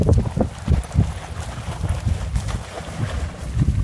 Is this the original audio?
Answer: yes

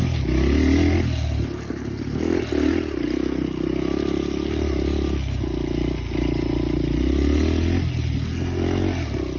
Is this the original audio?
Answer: yes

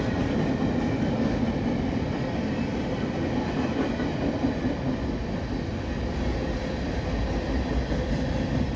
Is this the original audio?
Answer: yes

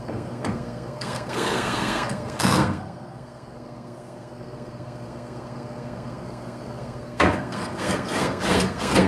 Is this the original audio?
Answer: no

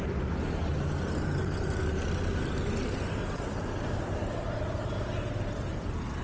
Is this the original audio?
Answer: yes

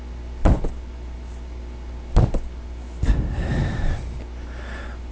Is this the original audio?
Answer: yes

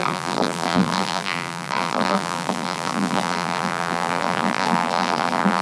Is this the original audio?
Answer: no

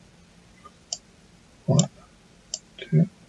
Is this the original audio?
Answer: yes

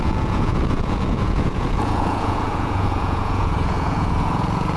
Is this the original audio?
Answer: no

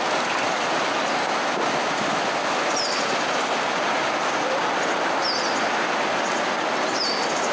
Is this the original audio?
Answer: yes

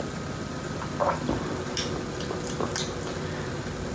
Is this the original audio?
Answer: yes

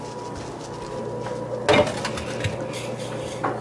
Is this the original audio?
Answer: yes